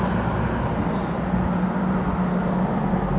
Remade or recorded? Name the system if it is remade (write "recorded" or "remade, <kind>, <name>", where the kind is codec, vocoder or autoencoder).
recorded